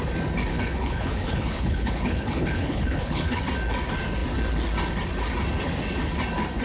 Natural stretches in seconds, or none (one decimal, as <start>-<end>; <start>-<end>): 0.0-0.5; 3.4-6.6